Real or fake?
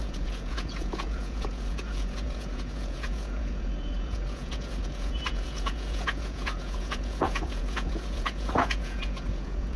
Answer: fake